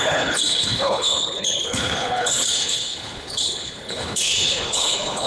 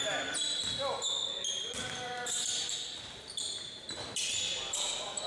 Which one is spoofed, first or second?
first